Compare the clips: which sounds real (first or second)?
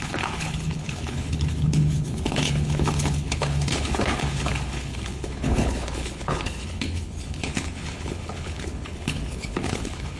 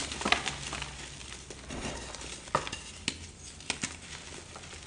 second